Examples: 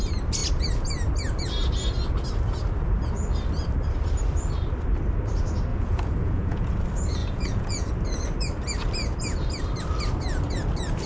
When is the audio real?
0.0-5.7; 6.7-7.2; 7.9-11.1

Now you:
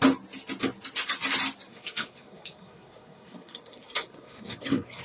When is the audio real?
0.0-1.7

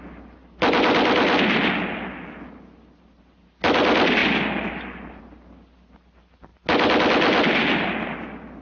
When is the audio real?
0.0-8.6

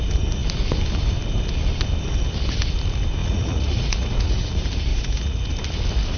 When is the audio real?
0.0-3.2; 4.5-4.9; 5.5-6.2

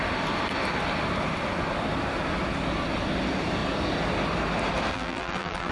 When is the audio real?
0.0-4.9

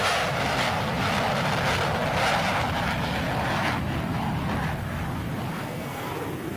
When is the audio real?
0.0-5.5; 6.1-6.6

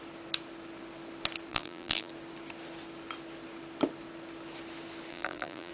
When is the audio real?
0.0-1.5; 2.1-5.1